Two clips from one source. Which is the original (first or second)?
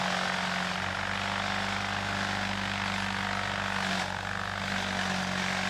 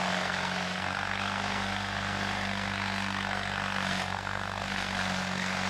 first